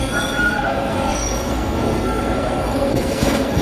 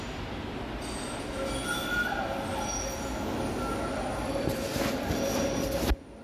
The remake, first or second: first